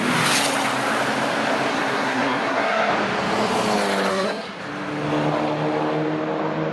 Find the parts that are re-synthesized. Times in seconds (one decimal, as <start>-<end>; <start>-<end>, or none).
1.7-2.9; 4.1-4.6

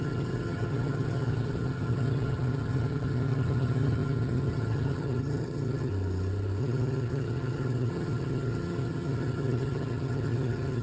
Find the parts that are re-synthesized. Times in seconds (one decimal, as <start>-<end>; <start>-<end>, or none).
0.0-5.9; 6.6-10.8

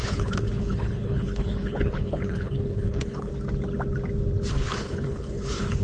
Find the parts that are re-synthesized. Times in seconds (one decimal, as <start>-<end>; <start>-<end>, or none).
0.0-3.3; 4.5-5.8

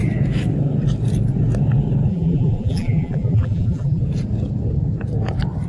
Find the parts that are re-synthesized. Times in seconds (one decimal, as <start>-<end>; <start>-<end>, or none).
2.1-4.0